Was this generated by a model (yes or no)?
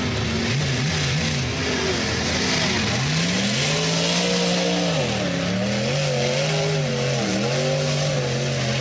no